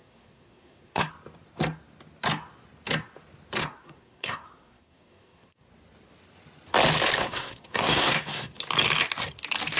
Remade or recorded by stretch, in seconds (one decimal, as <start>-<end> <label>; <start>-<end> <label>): 0.0-1.1 remade; 1.1-3.6 recorded; 3.6-5.7 remade; 5.7-7.2 recorded; 7.2-8.6 remade; 8.6-9.8 recorded